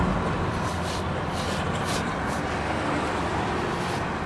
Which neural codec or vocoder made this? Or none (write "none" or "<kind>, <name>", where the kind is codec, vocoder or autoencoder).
none